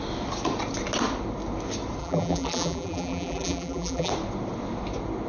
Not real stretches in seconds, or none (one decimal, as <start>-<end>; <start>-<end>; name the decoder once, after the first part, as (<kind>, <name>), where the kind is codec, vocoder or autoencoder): 2.0-4.1 (vocoder, BigVGAN v2)